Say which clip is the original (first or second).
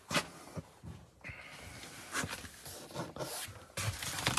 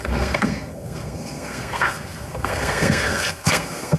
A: first